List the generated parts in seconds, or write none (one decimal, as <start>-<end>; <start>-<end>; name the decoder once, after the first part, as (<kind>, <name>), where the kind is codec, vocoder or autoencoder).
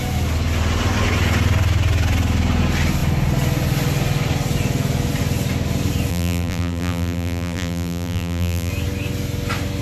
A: 6.1-8.7 (vocoder, BigVGAN v2)